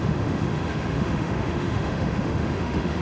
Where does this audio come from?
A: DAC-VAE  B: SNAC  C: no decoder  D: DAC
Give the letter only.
A